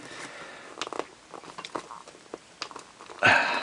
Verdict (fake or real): real